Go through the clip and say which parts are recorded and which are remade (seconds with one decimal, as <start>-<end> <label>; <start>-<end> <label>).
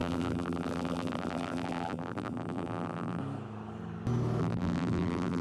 0.0-3.2 remade; 3.2-4.4 recorded; 4.4-5.4 remade